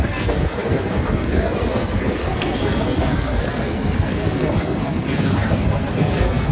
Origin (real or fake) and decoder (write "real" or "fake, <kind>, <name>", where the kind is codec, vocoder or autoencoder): fake, codec, SNAC